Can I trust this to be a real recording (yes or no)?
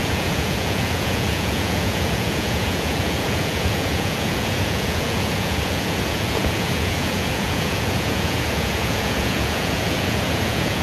no